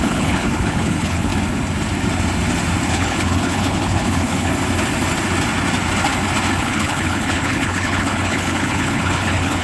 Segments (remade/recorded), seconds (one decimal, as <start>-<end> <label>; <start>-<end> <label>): 0.0-1.3 remade; 1.3-2.9 recorded; 2.9-4.5 remade; 4.5-6.6 recorded; 6.6-9.6 remade